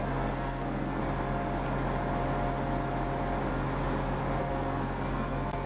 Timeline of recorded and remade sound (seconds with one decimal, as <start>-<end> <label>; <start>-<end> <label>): 0.0-1.0 remade; 1.0-4.4 recorded; 4.4-5.7 remade